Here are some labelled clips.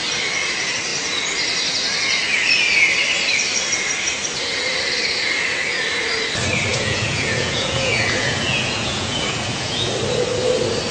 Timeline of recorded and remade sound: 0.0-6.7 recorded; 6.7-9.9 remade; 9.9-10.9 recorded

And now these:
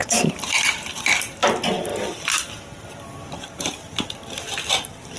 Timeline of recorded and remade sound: 0.0-5.2 remade

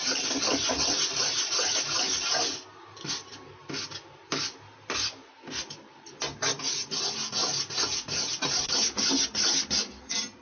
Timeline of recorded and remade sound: 0.0-10.4 recorded

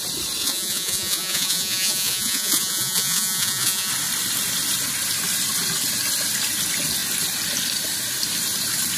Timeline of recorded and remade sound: 0.0-0.4 recorded; 0.4-3.9 remade; 3.9-9.0 recorded

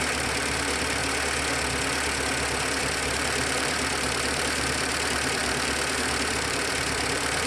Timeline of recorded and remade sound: 0.0-1.0 remade; 1.0-2.8 recorded; 2.8-7.5 remade

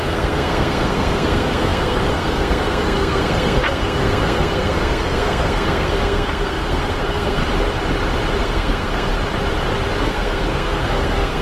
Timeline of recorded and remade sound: 0.0-7.4 remade; 7.4-8.4 recorded; 8.4-9.1 remade; 9.1-10.0 recorded; 10.0-11.4 remade